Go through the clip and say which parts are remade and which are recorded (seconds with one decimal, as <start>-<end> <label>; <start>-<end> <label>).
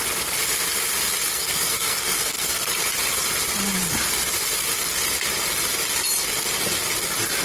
0.0-1.3 recorded; 1.3-2.7 remade; 2.7-7.4 recorded